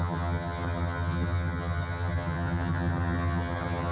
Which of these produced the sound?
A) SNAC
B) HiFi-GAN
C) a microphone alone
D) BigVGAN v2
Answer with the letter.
B